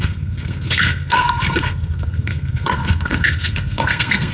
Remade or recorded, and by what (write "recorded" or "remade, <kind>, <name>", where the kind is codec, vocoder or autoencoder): remade, codec, SNAC